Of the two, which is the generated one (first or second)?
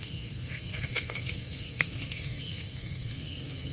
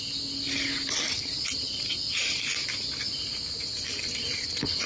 first